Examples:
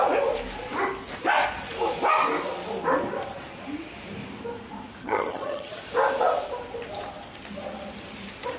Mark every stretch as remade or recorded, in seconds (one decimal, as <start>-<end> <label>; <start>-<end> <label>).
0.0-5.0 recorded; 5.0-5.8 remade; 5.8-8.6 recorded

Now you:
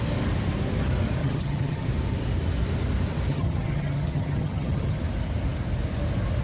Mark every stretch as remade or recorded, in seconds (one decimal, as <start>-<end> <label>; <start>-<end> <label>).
0.0-1.2 recorded; 1.2-1.9 remade; 1.9-3.3 recorded; 3.3-5.0 remade; 5.0-6.4 recorded

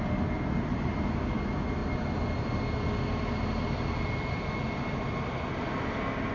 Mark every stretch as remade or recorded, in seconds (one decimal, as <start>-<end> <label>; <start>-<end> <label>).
0.0-6.3 recorded

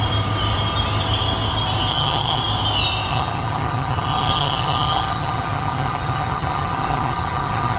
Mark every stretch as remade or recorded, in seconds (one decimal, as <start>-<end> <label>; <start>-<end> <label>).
0.0-1.9 recorded; 1.9-2.4 remade; 2.4-3.1 recorded; 3.1-7.8 remade

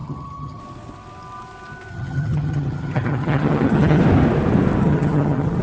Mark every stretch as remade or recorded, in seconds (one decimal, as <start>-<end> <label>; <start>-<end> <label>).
0.0-0.6 remade; 0.6-1.9 recorded; 1.9-4.0 remade; 4.0-4.8 recorded; 4.8-5.6 remade

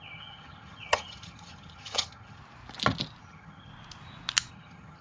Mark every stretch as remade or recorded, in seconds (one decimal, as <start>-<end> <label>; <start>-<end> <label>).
0.0-2.4 remade; 2.4-3.2 recorded; 3.2-3.7 remade; 3.7-4.5 recorded; 4.5-5.0 remade